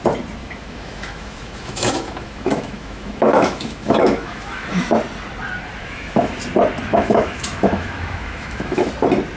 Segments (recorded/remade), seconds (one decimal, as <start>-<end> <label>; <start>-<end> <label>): 0.0-0.4 recorded; 0.4-4.9 remade; 4.9-5.8 recorded; 5.8-6.4 remade; 6.4-6.9 recorded; 6.9-8.9 remade; 8.9-9.4 recorded